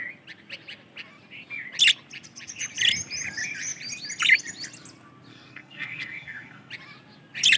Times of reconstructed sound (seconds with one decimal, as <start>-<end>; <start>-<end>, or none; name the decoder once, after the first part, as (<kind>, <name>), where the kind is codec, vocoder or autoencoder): 5.3-6.7 (codec, SNAC)